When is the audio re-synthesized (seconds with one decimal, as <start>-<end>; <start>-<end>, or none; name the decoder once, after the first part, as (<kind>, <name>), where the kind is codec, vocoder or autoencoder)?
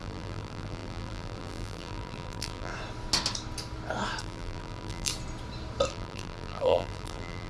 0.0-2.7 (vocoder, BigVGAN v2); 4.2-5.1; 5.9-7.5